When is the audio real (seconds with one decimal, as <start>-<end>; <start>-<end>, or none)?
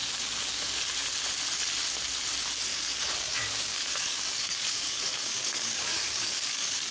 0.8-2.7